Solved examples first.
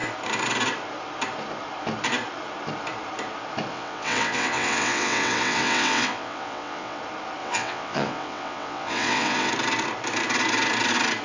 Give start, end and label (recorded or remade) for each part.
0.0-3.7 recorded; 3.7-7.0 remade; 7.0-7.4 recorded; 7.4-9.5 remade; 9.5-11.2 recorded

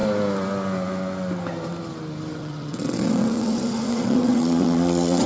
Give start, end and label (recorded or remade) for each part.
0.0-2.3 recorded; 2.3-5.3 remade

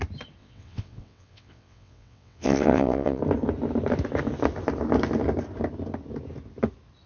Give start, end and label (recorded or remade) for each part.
0.0-0.4 recorded; 0.4-3.2 remade; 3.2-7.1 recorded

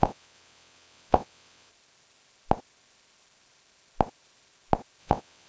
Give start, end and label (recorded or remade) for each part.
0.0-1.7 remade; 1.7-5.0 recorded; 5.0-5.5 remade